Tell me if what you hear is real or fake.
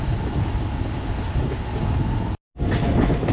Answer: real